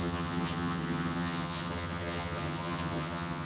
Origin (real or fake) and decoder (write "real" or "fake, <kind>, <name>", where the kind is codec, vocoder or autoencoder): fake, vocoder, HiFi-GAN